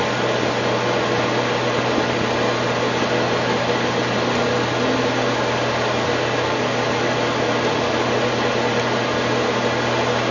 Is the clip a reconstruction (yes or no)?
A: no